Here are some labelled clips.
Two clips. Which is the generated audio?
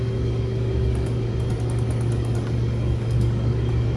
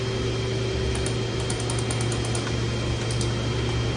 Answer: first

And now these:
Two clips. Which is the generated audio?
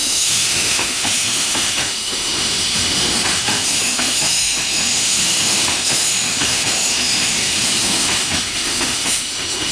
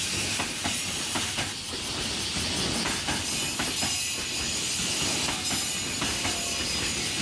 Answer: first